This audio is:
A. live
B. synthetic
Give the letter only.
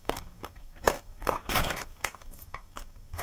B